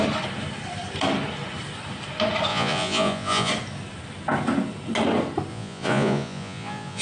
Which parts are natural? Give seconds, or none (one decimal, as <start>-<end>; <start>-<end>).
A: 0.0-2.5; 3.5-5.5

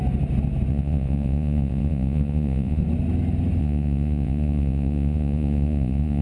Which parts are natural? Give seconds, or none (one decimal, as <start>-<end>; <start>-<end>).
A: 0.0-0.7; 2.8-3.6

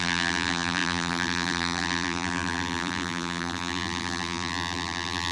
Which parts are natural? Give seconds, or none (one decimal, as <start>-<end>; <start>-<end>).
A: none

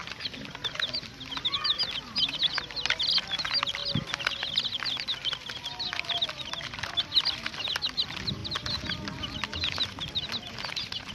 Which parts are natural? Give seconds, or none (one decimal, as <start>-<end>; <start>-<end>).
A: 0.0-11.1

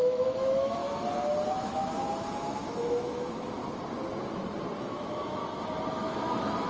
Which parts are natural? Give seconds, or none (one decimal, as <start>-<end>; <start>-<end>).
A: 0.8-1.5; 3.6-4.8; 5.4-5.9

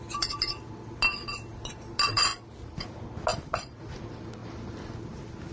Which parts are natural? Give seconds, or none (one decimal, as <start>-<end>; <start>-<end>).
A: 0.0-3.3; 3.8-4.4; 4.9-5.5

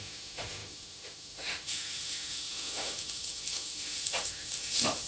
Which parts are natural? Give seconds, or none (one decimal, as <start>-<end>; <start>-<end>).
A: none